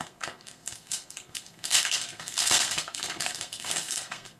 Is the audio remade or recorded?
remade